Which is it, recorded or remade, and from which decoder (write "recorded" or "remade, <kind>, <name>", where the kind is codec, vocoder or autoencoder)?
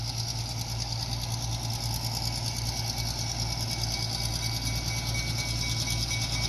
recorded